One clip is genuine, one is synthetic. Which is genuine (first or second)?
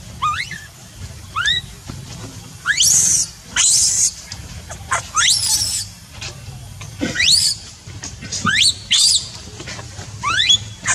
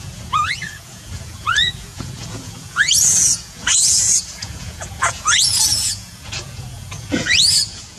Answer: first